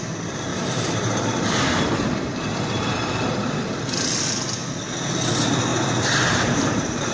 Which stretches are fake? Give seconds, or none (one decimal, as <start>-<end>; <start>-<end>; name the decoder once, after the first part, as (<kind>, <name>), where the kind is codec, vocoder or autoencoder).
0.5-1.6 (vocoder, BigVGAN v2); 5.7-7.1